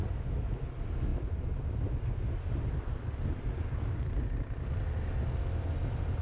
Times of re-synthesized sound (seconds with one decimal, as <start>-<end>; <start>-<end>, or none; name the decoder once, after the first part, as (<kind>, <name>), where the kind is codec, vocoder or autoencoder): none